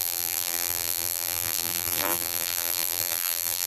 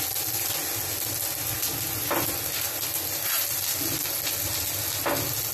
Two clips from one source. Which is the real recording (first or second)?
second